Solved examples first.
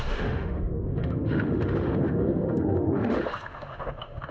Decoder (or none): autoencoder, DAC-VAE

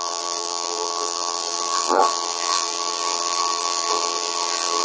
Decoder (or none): vocoder, BigVGAN v2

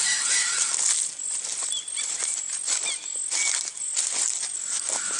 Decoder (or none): none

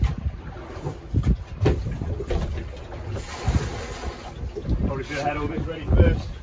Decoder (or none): none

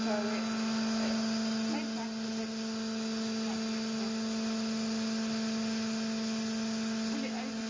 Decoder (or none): none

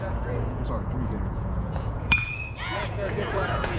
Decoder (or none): vocoder, Vocos